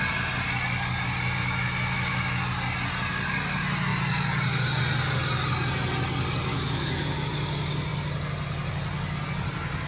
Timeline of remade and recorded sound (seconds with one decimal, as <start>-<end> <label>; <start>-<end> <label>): 0.0-1.4 recorded; 1.4-2.4 remade; 2.4-6.5 recorded; 6.5-7.3 remade; 7.3-9.9 recorded